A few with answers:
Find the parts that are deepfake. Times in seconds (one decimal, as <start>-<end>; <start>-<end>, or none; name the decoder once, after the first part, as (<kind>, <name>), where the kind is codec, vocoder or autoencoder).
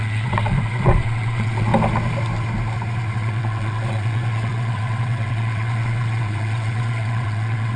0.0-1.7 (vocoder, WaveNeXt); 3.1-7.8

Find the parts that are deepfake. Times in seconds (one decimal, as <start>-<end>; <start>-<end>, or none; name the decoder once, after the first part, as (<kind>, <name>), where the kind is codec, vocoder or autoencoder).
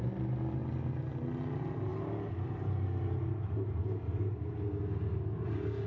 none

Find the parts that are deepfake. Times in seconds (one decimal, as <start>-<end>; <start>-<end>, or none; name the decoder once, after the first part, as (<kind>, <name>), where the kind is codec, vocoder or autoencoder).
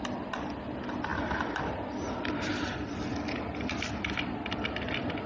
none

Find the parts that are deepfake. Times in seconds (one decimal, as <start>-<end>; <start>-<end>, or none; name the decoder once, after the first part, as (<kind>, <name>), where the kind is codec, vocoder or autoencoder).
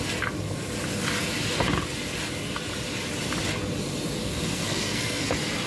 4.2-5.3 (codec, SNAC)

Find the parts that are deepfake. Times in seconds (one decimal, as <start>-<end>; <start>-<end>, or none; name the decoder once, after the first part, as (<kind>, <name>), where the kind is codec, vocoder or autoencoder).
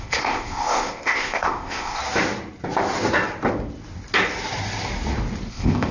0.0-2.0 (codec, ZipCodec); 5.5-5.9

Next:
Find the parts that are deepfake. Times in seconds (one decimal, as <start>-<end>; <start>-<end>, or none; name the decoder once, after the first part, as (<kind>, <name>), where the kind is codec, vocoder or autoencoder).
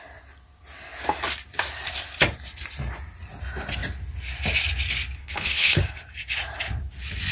5.2-5.8 (codec, HILCodec)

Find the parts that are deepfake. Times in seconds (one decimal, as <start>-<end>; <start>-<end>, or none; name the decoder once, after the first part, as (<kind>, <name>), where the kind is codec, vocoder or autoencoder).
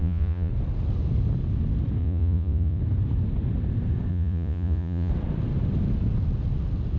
0.0-0.5 (vocoder, Vocos); 2.0-2.8; 4.1-5.1